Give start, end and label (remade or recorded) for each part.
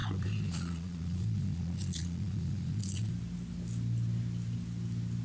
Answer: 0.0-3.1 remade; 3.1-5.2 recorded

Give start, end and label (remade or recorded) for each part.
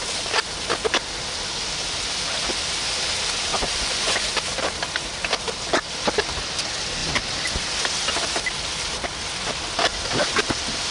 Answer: 0.0-3.5 recorded; 3.5-4.3 remade; 4.3-10.9 recorded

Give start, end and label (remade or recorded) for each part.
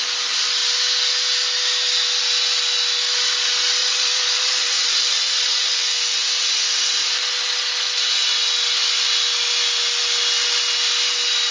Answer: 0.0-3.8 recorded; 3.8-5.7 remade; 5.7-11.5 recorded